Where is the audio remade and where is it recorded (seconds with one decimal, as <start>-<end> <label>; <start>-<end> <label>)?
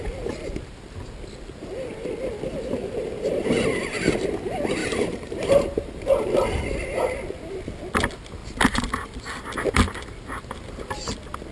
0.0-4.8 recorded; 4.8-6.3 remade; 6.3-8.4 recorded; 8.4-9.2 remade; 9.2-11.5 recorded